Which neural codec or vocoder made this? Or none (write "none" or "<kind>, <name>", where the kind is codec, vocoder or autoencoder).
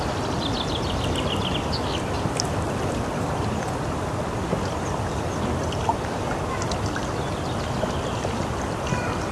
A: none